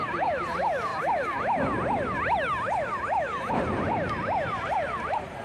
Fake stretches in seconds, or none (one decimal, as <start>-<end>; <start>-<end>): 0.0-0.9; 3.5-5.4